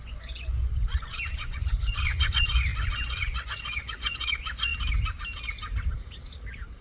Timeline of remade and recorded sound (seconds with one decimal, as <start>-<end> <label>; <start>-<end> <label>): 0.0-4.7 remade; 4.7-6.8 recorded

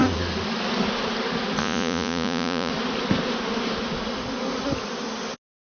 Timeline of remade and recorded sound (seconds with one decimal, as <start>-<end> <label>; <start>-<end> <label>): 0.0-1.6 recorded; 1.6-2.7 remade; 2.7-5.7 recorded

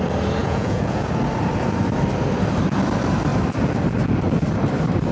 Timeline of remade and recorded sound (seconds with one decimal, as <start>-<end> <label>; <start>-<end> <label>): 0.0-0.4 recorded; 0.4-1.1 remade; 1.1-5.1 recorded

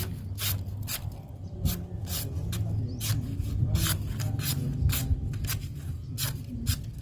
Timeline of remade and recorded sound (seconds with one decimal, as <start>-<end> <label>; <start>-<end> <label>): 0.0-7.0 recorded

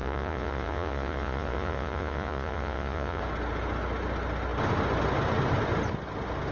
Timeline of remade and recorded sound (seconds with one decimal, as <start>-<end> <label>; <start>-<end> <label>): 0.0-3.2 remade; 3.2-6.5 recorded

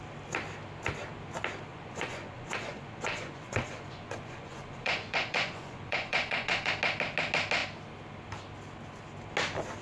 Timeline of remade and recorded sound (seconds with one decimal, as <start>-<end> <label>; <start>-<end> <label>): 0.0-1.7 recorded; 1.7-6.7 remade; 6.7-9.8 recorded

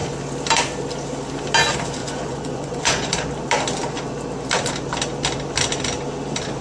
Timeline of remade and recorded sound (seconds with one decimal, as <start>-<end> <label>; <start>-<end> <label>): 0.0-2.0 recorded; 2.0-3.1 remade; 3.1-6.6 recorded

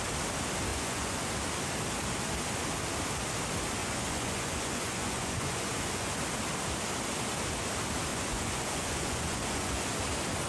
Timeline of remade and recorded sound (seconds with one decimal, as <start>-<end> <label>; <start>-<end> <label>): 0.0-0.7 recorded; 0.7-1.3 remade; 1.3-3.8 recorded; 3.8-6.2 remade; 6.2-8.1 recorded; 8.1-9.9 remade; 9.9-10.5 recorded